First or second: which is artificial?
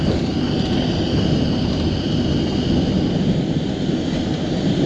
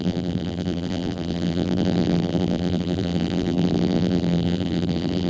second